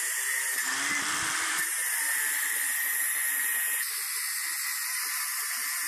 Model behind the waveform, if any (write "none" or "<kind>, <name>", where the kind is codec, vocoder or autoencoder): vocoder, BigVGAN v2